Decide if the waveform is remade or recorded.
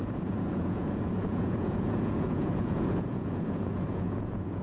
remade